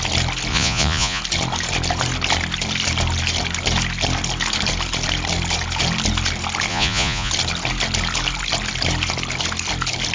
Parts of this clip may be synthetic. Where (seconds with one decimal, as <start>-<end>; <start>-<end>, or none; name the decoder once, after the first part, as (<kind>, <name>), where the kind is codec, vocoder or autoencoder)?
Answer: 0.5-1.2 (vocoder, Vocos); 6.7-7.3